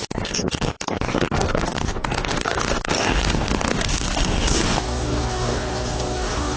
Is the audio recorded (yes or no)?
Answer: no